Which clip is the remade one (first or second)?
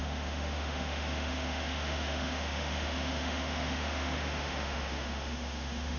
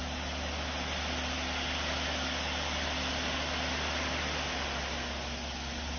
first